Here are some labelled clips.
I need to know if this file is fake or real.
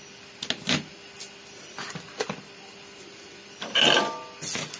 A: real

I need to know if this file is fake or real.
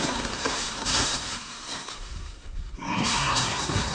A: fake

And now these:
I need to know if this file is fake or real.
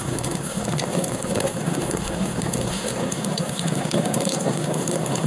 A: fake